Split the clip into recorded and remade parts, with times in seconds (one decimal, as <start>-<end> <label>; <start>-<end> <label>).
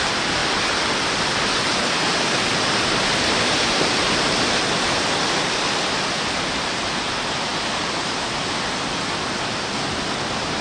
0.0-10.6 recorded